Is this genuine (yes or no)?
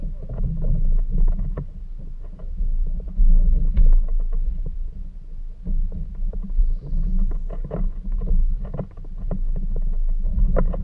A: yes